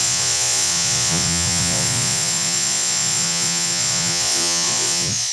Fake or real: fake